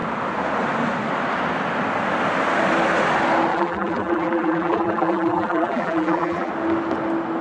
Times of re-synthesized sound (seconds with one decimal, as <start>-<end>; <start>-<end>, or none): 3.5-6.5